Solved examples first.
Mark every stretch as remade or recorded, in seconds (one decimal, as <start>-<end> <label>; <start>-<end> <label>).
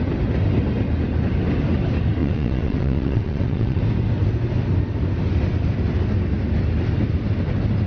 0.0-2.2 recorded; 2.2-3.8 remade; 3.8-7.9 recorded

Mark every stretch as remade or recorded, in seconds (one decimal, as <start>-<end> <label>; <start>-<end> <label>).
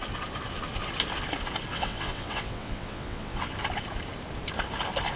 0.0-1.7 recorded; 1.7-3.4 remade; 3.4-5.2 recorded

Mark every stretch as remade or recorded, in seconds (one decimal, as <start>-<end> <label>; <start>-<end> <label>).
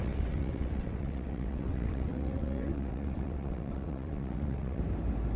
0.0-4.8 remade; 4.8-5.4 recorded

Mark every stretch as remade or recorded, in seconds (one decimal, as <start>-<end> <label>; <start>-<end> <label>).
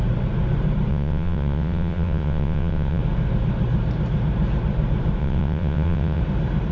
0.0-0.9 recorded; 0.9-3.0 remade; 3.0-5.2 recorded; 5.2-6.2 remade; 6.2-6.7 recorded